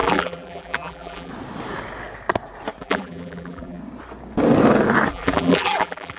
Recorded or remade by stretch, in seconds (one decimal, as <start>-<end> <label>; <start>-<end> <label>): 0.0-1.3 remade; 1.3-2.8 recorded; 2.8-3.8 remade; 3.8-5.1 recorded; 5.1-6.2 remade